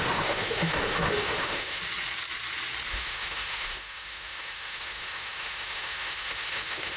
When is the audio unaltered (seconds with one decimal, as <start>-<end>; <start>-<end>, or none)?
1.8-2.9